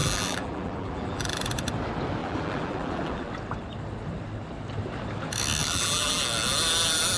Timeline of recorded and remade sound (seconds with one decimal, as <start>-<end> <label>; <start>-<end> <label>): 0.0-1.4 remade; 1.4-2.2 recorded; 2.2-3.3 remade; 3.3-5.6 recorded; 5.6-6.2 remade; 6.2-7.2 recorded